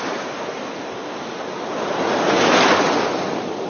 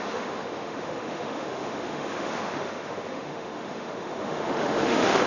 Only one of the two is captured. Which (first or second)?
first